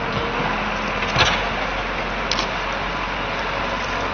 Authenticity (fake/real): real